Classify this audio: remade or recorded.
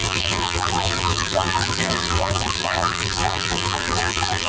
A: remade